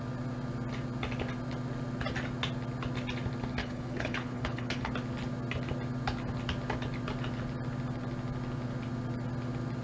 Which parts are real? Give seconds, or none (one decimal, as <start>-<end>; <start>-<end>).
0.0-3.6; 4.9-9.8